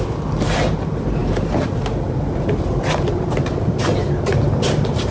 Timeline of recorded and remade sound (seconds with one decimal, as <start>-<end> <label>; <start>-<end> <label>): 0.0-5.1 recorded